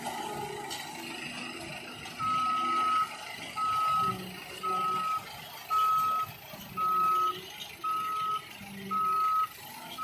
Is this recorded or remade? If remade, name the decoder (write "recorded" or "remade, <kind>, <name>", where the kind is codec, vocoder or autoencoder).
recorded